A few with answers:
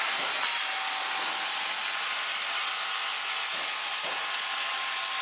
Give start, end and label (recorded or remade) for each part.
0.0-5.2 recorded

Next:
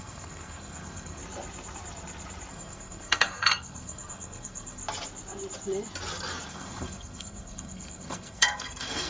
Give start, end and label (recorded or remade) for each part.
0.0-1.2 remade; 1.2-2.5 recorded; 2.5-4.8 remade; 4.8-6.5 recorded; 6.5-9.1 remade

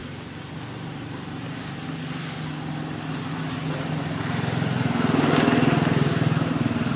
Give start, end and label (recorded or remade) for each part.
0.0-7.0 recorded

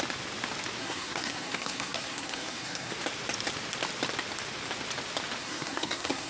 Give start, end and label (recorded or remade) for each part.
0.0-0.8 recorded; 0.8-2.9 remade; 2.9-5.4 recorded; 5.4-6.3 remade

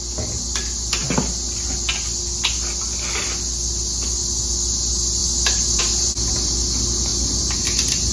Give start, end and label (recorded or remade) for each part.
0.0-8.1 recorded

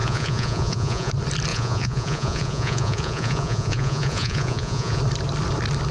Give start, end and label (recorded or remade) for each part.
0.0-1.1 remade; 1.1-1.5 recorded; 1.5-5.0 remade; 5.0-5.9 recorded